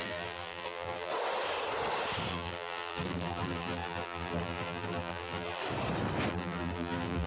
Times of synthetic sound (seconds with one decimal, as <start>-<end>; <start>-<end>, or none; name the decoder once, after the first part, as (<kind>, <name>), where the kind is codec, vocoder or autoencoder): 0.0-1.1 (vocoder, BigVGAN v2); 2.3-5.6; 6.3-7.3